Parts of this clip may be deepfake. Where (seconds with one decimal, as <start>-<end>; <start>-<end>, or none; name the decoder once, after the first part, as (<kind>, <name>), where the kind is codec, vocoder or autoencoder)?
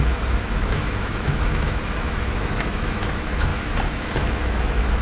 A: 0.0-5.0 (autoencoder, DAC-VAE)